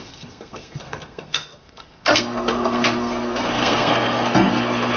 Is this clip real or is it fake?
fake